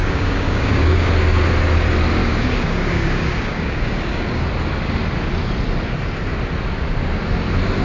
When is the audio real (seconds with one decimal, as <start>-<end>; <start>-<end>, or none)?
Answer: 1.1-2.2; 4.4-7.8